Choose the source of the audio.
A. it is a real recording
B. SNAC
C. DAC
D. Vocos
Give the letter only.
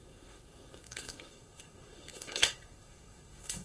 B